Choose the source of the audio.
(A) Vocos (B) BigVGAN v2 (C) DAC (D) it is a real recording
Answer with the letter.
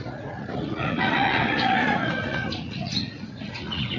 A